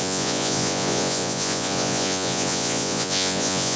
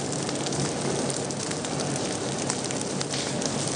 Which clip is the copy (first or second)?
first